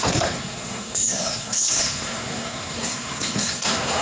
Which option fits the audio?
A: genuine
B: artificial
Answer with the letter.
B